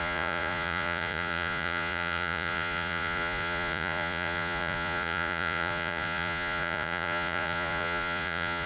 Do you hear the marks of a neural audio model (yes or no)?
yes